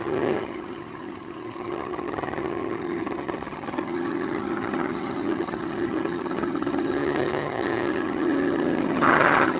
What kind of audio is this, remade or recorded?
remade